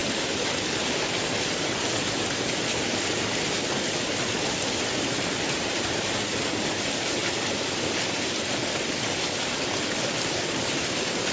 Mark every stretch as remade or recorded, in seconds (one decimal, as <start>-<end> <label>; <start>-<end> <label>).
0.0-7.2 recorded; 7.2-9.2 remade; 9.2-11.3 recorded